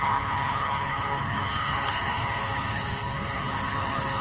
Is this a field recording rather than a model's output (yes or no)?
no